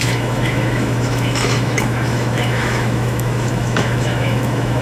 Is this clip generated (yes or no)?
yes